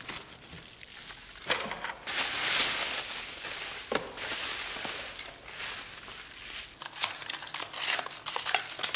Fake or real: real